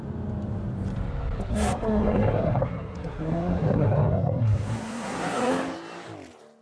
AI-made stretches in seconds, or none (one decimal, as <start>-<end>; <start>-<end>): 1.5-5.5